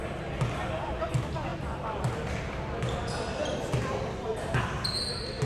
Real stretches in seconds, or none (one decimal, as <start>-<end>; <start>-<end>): 0.0-5.5